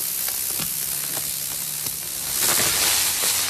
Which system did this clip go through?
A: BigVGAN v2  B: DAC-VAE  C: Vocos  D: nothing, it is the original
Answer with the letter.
D